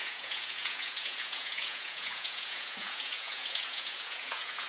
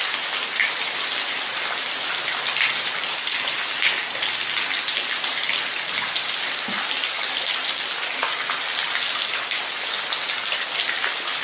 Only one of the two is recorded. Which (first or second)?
second